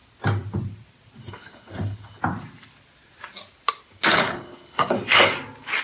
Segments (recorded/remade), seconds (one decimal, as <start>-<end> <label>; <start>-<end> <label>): 0.0-1.2 recorded; 1.2-2.2 remade; 2.2-4.1 recorded; 4.1-5.3 remade; 5.3-5.8 recorded